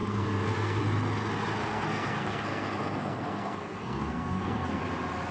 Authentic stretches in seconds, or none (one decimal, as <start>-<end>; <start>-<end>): 0.8-1.6; 4.8-5.3